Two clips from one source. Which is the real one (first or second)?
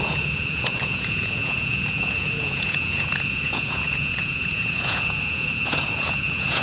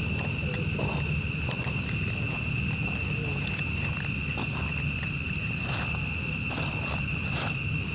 second